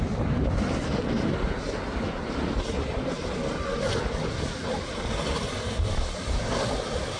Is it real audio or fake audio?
real